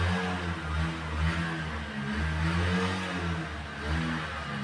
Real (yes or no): yes